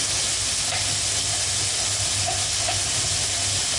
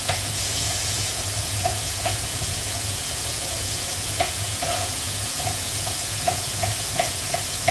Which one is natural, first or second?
first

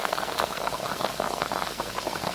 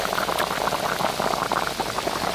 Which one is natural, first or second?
second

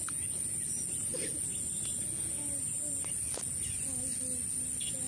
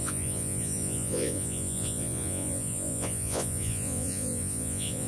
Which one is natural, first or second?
first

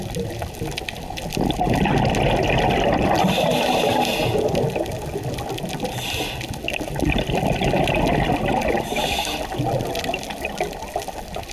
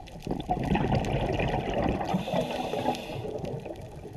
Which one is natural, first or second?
first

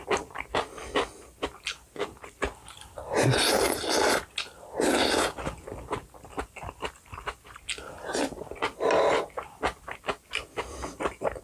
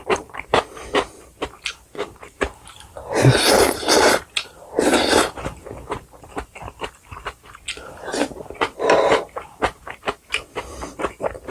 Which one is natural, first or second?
first